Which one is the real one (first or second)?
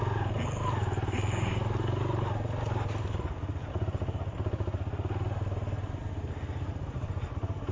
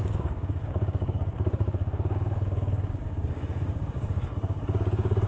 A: first